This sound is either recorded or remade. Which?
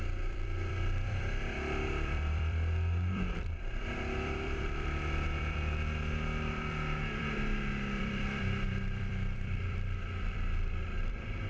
remade